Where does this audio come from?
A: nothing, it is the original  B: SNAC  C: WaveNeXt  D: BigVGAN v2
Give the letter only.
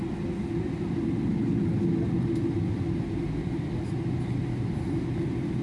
A